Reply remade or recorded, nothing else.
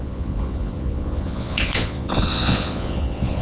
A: remade